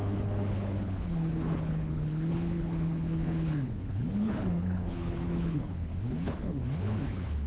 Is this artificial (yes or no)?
yes